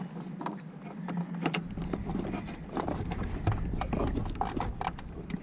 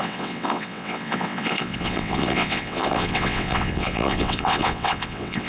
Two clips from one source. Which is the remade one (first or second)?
second